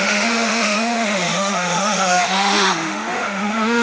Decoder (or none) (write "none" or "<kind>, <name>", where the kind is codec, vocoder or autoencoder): autoencoder, DAC-VAE